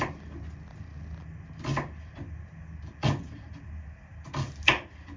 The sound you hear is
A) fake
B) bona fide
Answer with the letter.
B